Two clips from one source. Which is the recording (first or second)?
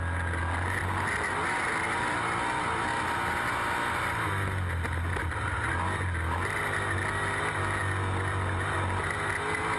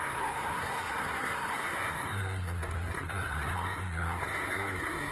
first